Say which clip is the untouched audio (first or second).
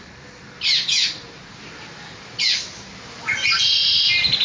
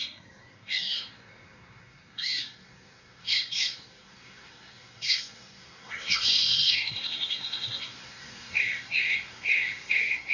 first